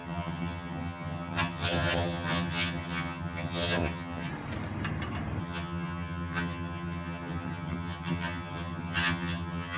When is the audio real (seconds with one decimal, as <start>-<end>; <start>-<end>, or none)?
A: 4.3-5.4